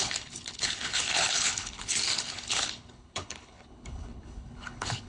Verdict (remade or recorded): remade